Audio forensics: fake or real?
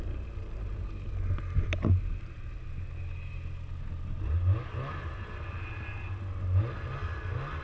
real